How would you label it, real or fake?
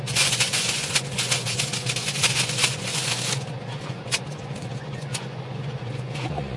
fake